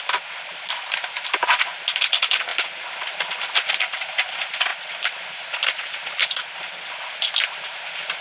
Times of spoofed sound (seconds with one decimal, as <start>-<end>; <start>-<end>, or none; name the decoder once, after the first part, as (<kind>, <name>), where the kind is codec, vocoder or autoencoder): none